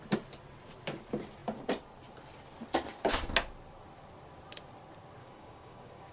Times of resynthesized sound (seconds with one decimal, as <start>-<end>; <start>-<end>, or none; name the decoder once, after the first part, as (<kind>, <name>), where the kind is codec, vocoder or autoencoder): 5.2-6.1 (codec, DAC)